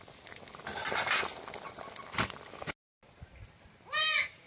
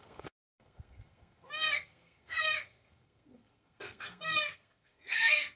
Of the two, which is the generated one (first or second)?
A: second